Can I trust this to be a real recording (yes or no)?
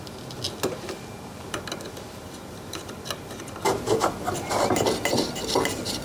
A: yes